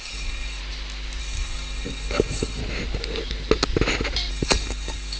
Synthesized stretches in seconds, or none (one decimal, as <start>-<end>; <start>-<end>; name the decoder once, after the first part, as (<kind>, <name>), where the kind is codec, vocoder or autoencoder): 0.0-0.6 (codec, DAC); 1.2-2.6; 4.3-5.2